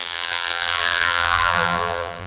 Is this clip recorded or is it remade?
remade